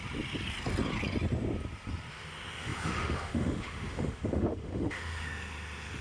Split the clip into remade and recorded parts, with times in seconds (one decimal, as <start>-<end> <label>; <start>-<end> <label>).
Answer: 0.0-2.1 recorded; 2.1-6.0 remade